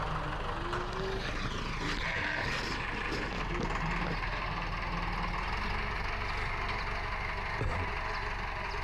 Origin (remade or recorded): recorded